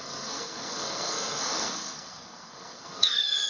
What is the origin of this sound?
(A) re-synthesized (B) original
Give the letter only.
A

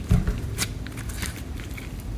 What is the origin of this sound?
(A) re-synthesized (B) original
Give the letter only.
B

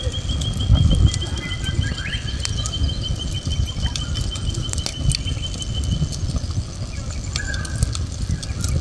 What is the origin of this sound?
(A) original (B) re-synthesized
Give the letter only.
A